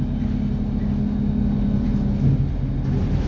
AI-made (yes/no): no